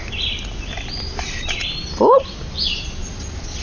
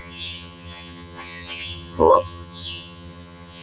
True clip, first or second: first